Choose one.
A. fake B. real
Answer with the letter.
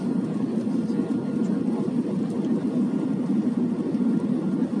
B